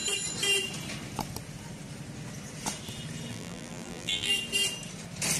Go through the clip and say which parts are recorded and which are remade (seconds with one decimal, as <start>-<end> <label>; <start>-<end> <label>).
0.0-3.3 recorded; 3.3-4.3 remade; 4.3-5.4 recorded